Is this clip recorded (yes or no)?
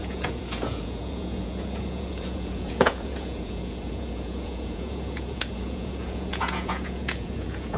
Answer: no